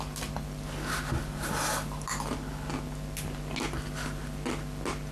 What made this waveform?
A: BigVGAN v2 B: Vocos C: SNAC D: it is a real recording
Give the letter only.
D